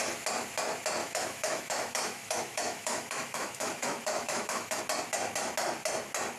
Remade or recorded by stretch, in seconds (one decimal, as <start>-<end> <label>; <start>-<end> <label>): 0.0-1.0 recorded; 1.0-4.8 remade; 4.8-6.4 recorded